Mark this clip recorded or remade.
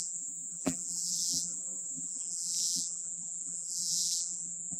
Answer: remade